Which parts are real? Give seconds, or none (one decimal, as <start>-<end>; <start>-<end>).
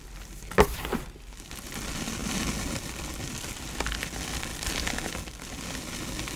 0.0-6.4